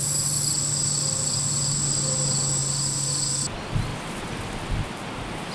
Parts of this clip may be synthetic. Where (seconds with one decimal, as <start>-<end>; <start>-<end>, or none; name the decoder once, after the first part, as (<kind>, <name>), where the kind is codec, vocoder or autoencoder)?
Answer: none